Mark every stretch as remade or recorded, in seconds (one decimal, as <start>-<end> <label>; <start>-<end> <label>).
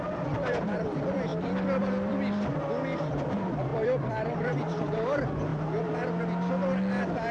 0.0-5.5 remade; 5.5-7.3 recorded